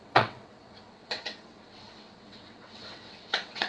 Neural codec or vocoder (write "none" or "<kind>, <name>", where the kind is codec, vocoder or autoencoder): vocoder, WaveNeXt